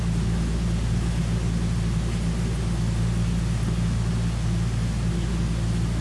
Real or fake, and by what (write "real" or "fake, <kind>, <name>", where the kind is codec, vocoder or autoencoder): real